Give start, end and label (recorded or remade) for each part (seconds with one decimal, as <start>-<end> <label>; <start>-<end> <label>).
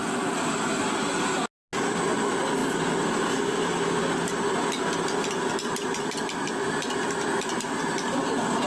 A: 0.0-8.7 recorded